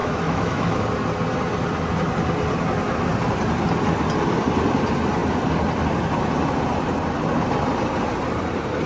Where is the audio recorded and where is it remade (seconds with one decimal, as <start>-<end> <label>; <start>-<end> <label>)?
0.0-0.8 remade; 0.8-8.9 recorded